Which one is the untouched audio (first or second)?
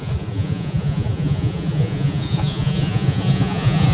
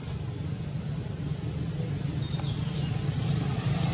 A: second